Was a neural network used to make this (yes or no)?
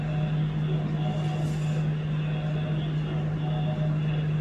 no